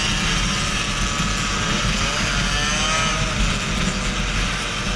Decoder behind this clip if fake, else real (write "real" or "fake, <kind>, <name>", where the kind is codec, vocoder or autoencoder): real